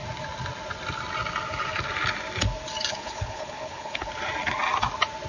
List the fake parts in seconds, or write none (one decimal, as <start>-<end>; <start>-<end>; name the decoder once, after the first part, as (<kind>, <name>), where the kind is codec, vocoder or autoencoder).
2.9-4.1 (codec, HILCodec)

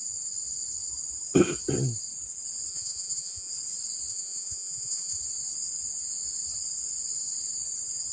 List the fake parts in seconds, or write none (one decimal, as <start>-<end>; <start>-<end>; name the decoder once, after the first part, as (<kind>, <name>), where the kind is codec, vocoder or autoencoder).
2.7-3.5 (vocoder, Vocos); 4.1-5.2